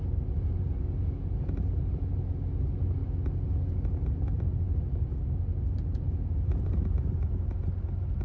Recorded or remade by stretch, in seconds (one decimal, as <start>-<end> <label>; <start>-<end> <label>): 0.0-8.2 recorded